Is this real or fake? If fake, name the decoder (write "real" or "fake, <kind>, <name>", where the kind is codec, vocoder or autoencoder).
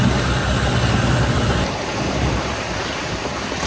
real